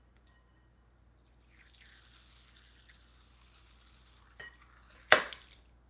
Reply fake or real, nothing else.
real